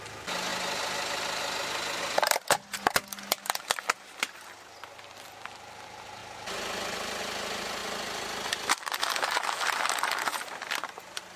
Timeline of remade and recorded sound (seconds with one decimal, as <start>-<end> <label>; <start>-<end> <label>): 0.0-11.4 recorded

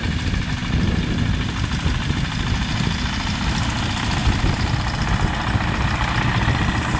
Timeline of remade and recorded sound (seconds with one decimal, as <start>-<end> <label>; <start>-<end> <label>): 0.0-7.0 recorded

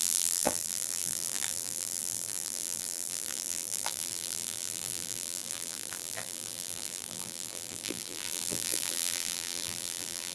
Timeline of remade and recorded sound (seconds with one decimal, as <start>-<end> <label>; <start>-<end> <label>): 0.0-10.3 remade

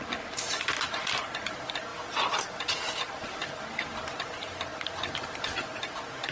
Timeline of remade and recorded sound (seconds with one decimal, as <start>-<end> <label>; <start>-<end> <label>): 0.0-1.9 recorded; 1.9-3.6 remade; 3.6-6.3 recorded